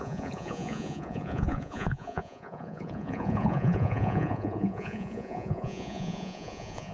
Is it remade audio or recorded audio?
remade